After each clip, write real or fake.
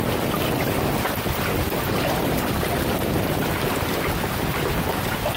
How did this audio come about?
real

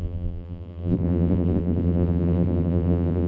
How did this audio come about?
fake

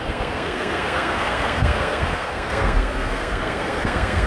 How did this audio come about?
fake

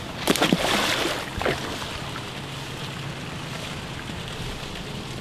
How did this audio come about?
real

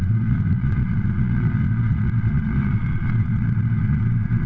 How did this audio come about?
fake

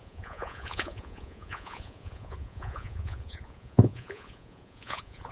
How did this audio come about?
fake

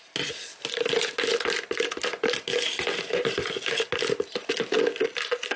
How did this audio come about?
real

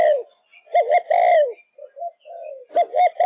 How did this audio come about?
real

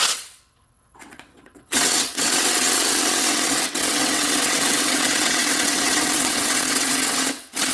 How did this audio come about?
fake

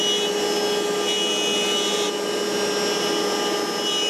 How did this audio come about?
real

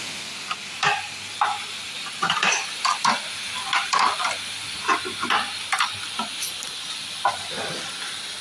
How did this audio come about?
fake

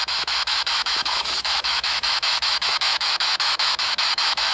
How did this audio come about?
fake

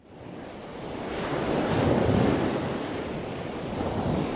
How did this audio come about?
real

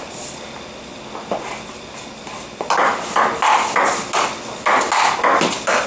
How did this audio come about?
real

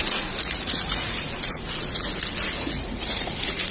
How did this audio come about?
fake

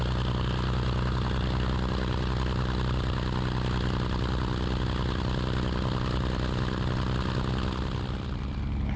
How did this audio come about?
real